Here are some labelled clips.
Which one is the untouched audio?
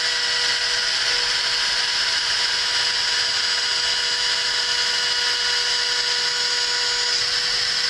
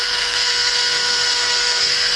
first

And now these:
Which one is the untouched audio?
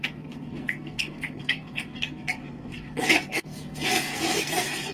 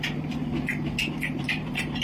second